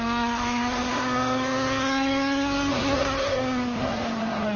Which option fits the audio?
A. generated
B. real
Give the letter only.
A